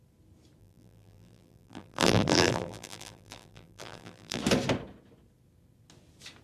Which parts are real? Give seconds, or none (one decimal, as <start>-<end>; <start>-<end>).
0.0-0.6; 4.4-6.4